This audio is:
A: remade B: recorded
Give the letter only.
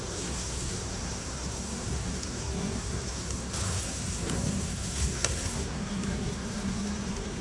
A